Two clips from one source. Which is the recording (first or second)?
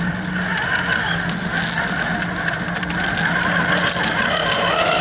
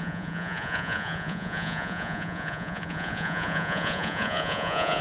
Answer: first